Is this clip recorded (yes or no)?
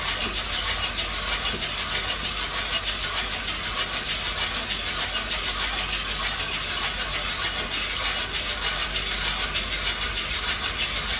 yes